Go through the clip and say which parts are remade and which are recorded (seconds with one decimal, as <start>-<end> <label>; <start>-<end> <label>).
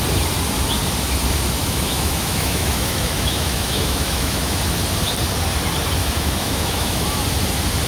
0.0-1.6 recorded; 1.6-4.6 remade; 4.6-6.0 recorded; 6.0-7.2 remade; 7.2-7.9 recorded